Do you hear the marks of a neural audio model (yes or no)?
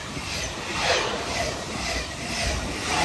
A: yes